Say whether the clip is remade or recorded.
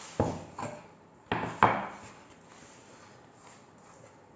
recorded